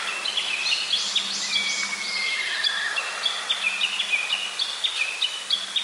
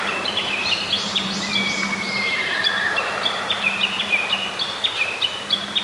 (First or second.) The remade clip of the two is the second